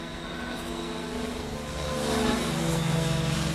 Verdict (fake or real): fake